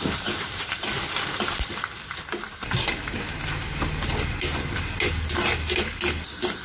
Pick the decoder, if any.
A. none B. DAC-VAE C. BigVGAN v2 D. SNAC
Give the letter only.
A